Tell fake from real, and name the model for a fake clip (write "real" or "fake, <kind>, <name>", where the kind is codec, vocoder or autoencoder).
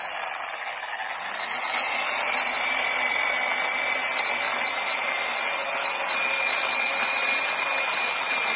real